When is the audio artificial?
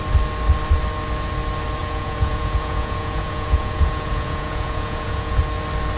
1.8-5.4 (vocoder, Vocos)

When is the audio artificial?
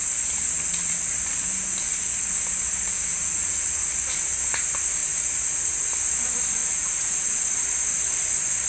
3.1-3.9 (vocoder, Vocos); 5.0-5.9; 6.6-7.4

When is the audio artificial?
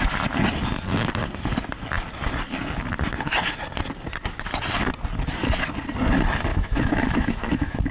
6.5-7.9 (autoencoder, DAC-VAE)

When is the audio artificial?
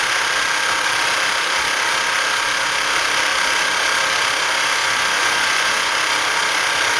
4.8-5.9 (vocoder, Vocos)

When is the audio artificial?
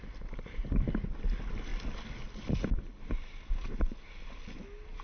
none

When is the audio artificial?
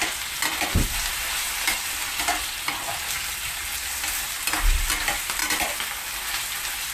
none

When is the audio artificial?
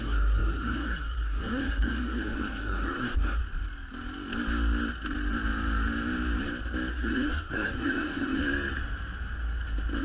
0.0-3.4 (codec, SNAC); 6.9-8.4